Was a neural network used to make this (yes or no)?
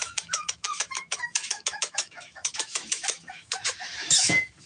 yes